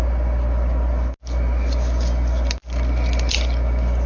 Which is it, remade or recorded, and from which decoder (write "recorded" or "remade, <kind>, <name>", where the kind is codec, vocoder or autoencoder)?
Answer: recorded